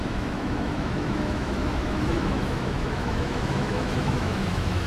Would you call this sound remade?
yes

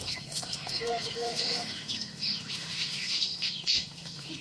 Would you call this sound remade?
yes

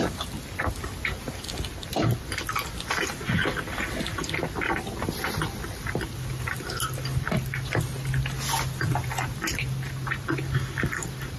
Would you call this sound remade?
no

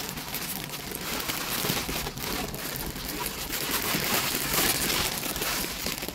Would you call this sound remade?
no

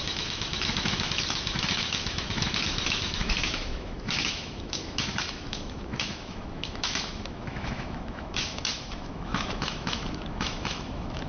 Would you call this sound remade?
yes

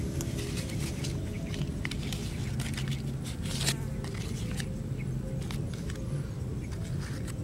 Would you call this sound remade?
no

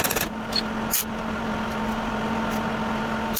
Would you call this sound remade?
no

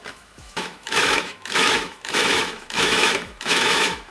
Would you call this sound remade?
yes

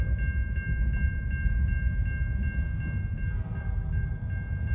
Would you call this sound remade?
no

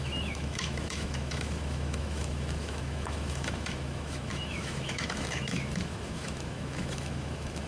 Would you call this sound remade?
yes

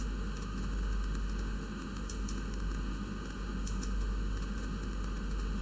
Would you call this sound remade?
yes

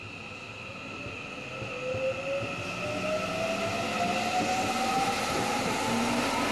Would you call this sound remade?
no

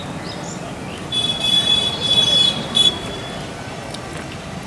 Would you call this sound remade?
no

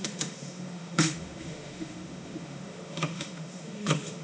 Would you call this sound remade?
yes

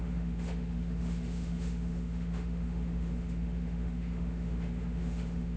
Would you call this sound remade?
yes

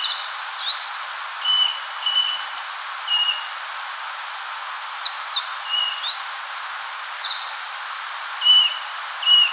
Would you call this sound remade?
no